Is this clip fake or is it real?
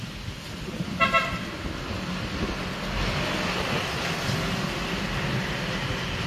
real